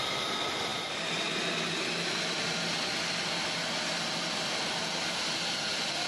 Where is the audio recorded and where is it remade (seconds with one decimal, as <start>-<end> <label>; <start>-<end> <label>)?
0.0-6.1 recorded